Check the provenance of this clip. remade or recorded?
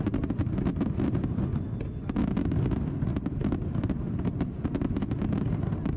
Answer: recorded